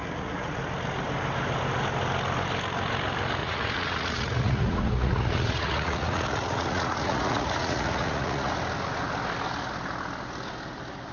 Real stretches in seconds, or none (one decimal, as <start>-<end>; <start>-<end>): 0.6-3.4; 8.5-11.1